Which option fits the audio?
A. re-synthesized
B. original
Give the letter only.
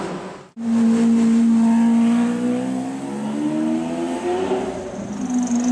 B